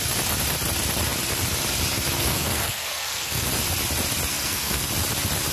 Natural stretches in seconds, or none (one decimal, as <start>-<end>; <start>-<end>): 0.0-2.2; 3.5-4.3; 4.9-5.5